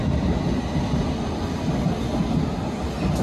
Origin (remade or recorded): recorded